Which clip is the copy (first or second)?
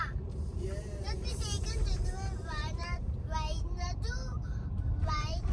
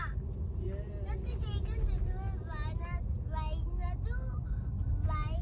first